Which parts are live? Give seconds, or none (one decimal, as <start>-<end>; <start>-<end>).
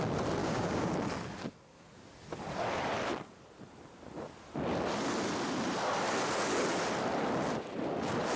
0.0-0.4; 0.9-8.4